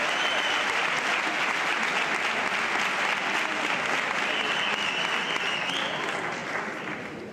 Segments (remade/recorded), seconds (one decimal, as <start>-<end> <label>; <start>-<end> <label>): 0.0-7.3 recorded